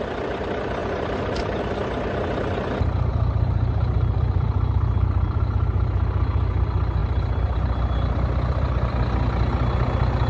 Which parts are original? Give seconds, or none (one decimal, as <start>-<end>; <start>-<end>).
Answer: 0.0-0.8; 1.6-3.1; 5.4-7.0; 8.9-10.3